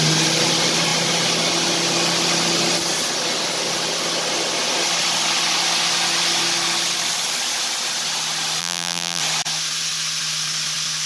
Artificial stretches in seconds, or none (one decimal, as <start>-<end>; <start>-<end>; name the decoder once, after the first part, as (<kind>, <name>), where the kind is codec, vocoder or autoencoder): 8.6-9.2 (vocoder, BigVGAN v2)